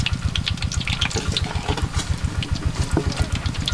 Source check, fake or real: real